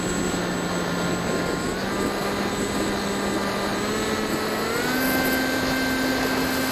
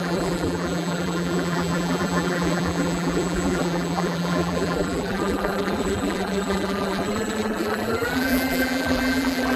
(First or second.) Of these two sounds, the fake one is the second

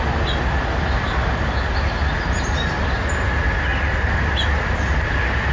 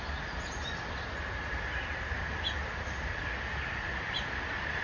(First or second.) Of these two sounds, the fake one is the second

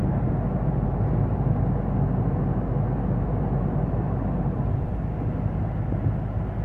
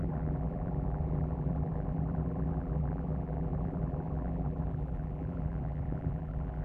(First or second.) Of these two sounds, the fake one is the second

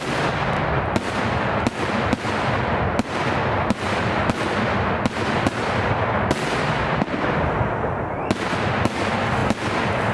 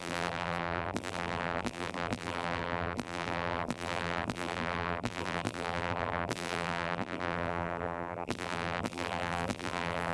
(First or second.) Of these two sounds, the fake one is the second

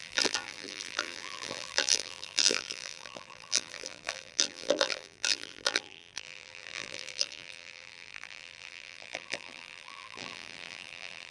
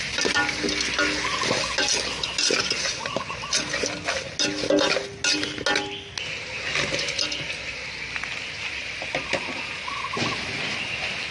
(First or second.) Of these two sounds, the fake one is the first